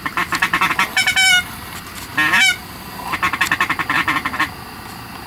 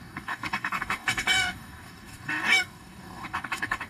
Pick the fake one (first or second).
second